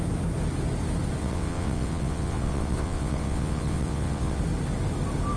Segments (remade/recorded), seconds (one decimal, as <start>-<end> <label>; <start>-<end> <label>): 0.0-1.2 recorded; 1.2-4.4 remade; 4.4-5.4 recorded